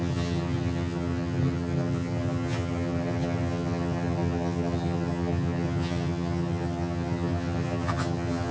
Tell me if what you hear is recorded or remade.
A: remade